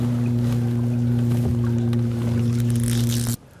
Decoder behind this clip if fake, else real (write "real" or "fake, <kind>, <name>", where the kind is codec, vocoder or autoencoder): real